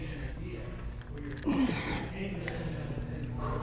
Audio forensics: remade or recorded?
recorded